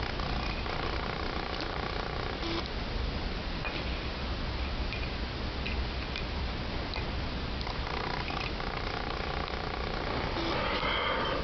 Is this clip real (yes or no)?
yes